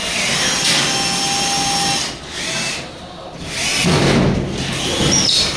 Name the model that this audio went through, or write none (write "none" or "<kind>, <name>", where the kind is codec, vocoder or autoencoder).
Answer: none